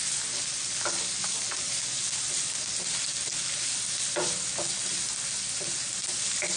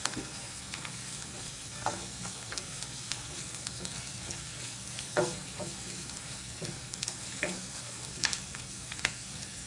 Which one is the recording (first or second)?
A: first